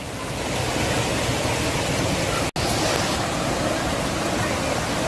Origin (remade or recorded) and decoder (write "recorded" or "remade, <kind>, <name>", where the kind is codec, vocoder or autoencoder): recorded